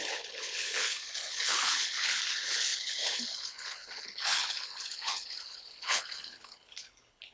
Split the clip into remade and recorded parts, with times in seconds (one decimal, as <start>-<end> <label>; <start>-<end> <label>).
0.0-7.3 remade